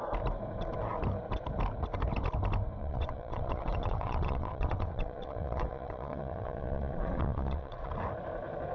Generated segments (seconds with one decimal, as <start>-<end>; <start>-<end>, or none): 2.8-7.9